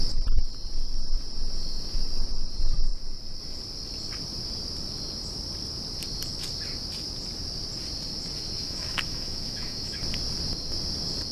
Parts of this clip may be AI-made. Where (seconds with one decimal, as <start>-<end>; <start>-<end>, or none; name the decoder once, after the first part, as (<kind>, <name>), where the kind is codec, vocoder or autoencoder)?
8.6-10.0 (autoencoder, DAC-VAE)